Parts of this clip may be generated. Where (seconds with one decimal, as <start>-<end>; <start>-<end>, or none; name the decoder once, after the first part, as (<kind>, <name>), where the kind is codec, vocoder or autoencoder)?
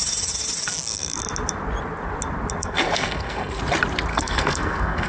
0.7-1.2 (codec, SNAC); 2.6-3.6; 4.1-5.1